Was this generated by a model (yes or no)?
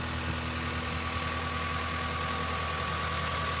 no